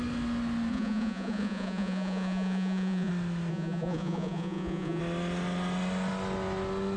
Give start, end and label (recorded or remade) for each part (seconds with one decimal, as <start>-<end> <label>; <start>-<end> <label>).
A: 0.0-0.7 recorded; 0.7-3.1 remade; 3.1-3.5 recorded; 3.5-5.0 remade; 5.0-7.0 recorded